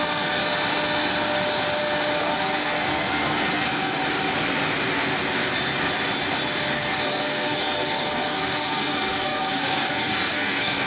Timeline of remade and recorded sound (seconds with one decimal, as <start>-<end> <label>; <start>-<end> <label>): 0.0-0.4 remade; 0.4-2.2 recorded; 2.2-4.0 remade; 4.0-6.6 recorded; 6.6-10.9 remade